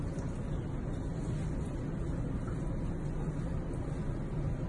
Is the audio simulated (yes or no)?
no